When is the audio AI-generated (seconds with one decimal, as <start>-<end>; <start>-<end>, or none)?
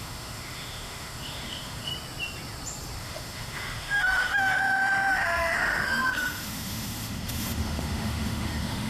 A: 0.0-1.9; 3.0-8.9